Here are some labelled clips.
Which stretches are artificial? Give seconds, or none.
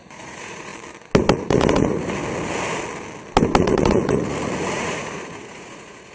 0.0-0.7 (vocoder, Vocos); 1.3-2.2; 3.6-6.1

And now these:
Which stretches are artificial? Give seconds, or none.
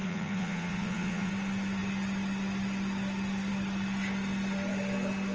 0.0-1.3 (vocoder, Vocos)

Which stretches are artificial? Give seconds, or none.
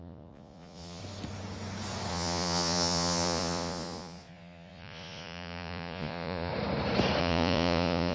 0.0-1.0 (vocoder, Vocos); 2.1-6.5; 7.2-8.1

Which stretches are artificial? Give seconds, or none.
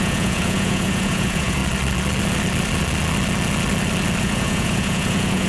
0.0-1.6 (vocoder, Vocos); 4.2-5.5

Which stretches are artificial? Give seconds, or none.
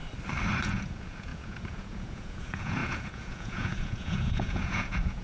0.6-5.2 (vocoder, Vocos)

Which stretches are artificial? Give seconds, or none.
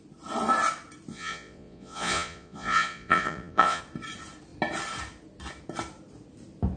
1.1-3.8 (vocoder, Vocos)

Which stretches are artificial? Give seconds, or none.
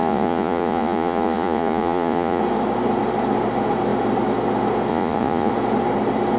0.0-2.4 (vocoder, Vocos); 4.9-5.5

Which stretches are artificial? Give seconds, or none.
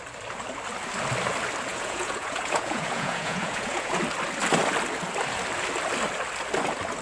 1.7-4.0 (vocoder, Vocos)